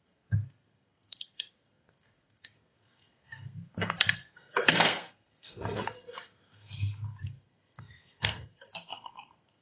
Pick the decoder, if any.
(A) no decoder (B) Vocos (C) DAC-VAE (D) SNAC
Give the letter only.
D